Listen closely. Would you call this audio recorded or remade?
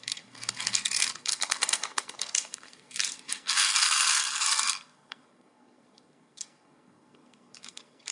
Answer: remade